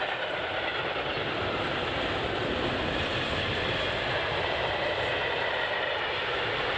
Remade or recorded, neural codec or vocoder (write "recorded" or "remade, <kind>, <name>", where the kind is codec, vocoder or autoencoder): recorded